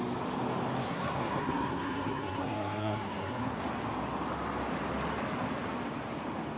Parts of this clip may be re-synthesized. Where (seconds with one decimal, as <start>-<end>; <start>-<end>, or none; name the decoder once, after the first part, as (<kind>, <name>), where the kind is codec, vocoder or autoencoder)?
0.8-3.6 (codec, SNAC)